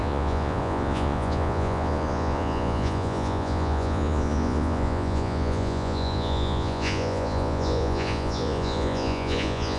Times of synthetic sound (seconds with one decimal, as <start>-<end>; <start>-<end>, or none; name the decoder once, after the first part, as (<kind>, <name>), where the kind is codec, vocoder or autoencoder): 0.0-9.8 (vocoder, Vocos)

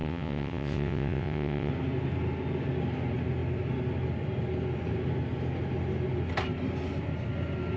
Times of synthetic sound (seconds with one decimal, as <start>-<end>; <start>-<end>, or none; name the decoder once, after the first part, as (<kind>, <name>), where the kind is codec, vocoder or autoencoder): 0.0-1.7 (vocoder, WaveNeXt)

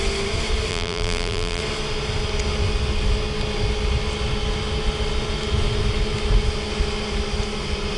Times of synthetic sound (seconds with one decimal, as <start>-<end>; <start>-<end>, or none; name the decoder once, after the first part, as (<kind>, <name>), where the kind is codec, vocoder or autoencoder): 0.7-1.6 (vocoder, BigVGAN v2)

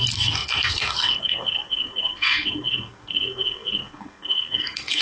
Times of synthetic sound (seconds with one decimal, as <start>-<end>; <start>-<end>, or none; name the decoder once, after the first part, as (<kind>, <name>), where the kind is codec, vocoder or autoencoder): 0.0-5.0 (codec, SNAC)

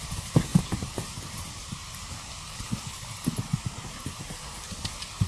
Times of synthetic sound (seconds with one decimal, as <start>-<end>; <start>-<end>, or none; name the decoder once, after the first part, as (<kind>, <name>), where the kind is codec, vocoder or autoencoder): 2.5-3.0 (codec, HILCodec)

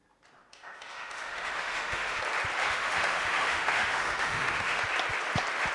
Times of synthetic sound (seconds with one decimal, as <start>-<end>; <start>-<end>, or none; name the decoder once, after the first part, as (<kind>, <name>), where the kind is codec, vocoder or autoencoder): 0.5-2.2 (autoencoder, DAC-VAE); 2.6-4.8

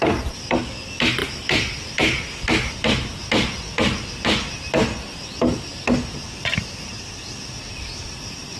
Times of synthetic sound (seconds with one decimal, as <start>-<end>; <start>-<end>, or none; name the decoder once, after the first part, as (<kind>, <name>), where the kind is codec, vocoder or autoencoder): none

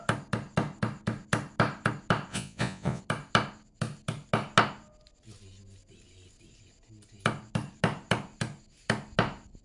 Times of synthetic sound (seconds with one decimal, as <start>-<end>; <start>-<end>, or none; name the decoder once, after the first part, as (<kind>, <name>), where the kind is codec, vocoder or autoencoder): 2.3-3.0 (vocoder, Vocos)